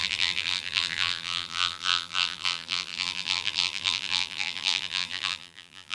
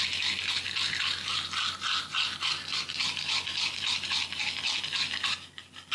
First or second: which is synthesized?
first